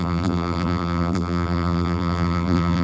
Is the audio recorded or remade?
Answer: remade